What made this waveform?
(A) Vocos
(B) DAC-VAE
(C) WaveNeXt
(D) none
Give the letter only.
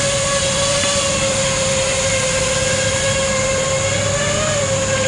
D